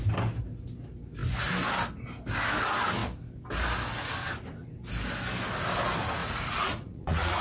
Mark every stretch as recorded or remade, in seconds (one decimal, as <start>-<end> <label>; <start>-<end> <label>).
0.0-6.2 recorded; 6.2-7.4 remade